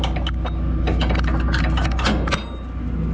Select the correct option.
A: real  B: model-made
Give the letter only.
A